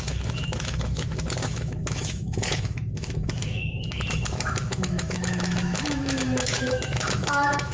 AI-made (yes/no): yes